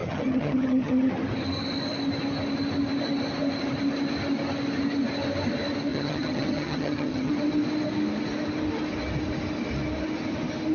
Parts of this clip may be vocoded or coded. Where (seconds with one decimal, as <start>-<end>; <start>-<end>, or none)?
0.0-1.1; 5.9-7.3